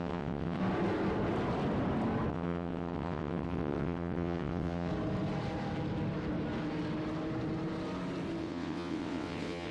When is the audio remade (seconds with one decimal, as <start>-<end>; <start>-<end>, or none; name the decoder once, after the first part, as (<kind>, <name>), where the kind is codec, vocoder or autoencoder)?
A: 0.0-0.6 (vocoder, WaveNeXt); 2.3-4.9; 8.4-9.7